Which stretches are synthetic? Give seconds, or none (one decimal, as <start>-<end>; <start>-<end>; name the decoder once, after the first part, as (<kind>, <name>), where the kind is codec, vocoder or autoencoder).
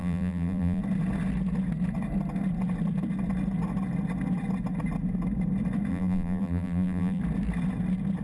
0.0-0.8 (vocoder, BigVGAN v2); 5.9-7.2